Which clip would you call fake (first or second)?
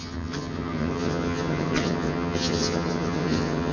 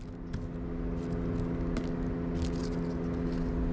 first